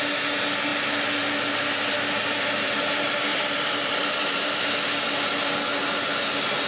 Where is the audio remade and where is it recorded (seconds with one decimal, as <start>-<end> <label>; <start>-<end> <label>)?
0.0-3.3 recorded; 3.3-4.6 remade; 4.6-6.7 recorded